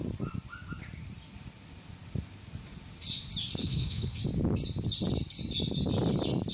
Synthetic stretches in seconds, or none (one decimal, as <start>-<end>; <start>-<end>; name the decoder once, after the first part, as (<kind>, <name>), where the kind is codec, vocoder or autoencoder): 3.6-4.2 (autoencoder, DAC-VAE)